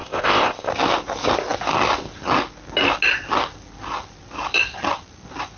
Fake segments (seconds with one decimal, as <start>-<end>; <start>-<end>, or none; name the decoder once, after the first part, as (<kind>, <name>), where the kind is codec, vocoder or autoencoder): 0.0-0.7 (codec, ZipCodec)